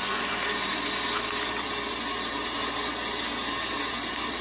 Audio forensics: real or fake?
real